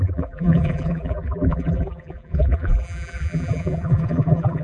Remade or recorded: remade